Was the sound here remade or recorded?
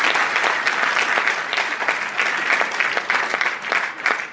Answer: recorded